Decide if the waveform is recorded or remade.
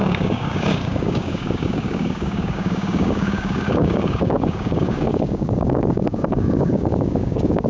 remade